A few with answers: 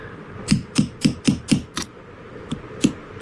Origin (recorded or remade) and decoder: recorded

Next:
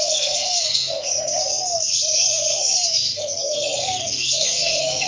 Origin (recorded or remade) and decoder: remade, codec, SNAC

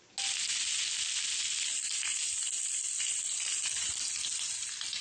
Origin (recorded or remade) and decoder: recorded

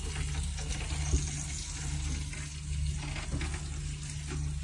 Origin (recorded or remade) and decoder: recorded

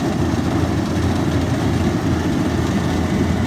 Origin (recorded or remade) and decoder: recorded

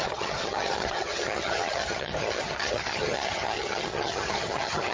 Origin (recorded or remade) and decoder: remade, vocoder, HiFi-GAN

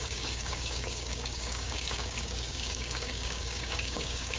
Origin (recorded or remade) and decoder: remade, codec, DAC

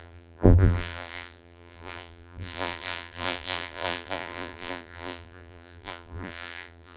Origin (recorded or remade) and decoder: remade, vocoder, BigVGAN v2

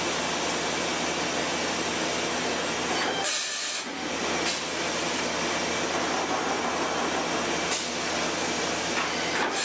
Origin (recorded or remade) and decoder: recorded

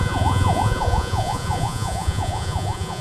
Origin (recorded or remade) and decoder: remade, vocoder, Vocos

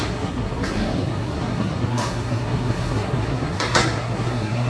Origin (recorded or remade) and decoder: remade, codec, SNAC